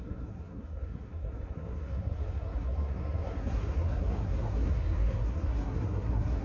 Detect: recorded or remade remade